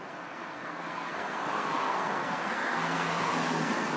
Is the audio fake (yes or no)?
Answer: yes